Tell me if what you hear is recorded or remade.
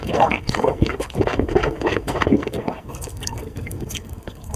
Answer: remade